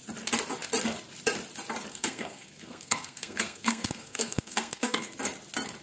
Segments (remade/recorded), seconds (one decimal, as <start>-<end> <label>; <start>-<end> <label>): 0.0-1.9 recorded; 1.9-5.1 remade; 5.1-5.8 recorded